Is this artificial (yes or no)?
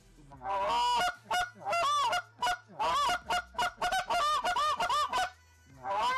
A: no